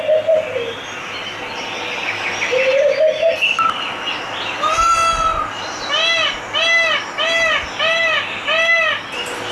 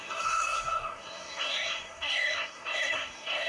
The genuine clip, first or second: first